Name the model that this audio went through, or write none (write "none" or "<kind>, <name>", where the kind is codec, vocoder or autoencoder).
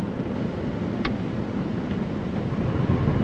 none